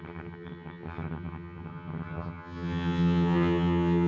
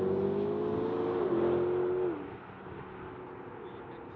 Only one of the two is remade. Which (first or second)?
first